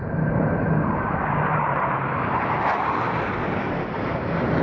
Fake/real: fake